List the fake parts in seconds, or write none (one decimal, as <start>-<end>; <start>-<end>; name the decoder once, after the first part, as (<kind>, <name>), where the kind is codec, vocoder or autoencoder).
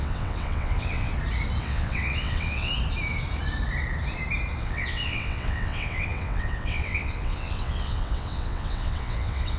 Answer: 0.0-1.1 (vocoder, WaveNeXt); 1.6-2.7; 4.6-9.6